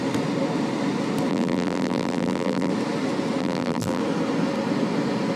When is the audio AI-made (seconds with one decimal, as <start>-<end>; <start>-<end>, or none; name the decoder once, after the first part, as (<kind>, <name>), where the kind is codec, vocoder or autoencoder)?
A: 1.3-2.7 (vocoder, BigVGAN v2); 3.4-4.0